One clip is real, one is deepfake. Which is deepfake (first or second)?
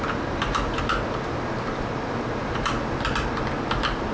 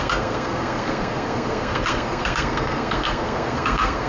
second